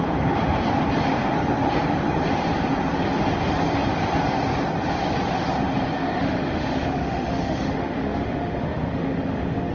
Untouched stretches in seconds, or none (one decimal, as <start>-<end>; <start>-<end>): 0.0-6.0